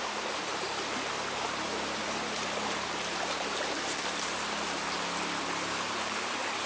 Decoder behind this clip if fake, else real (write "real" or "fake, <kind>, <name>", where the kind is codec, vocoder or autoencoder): real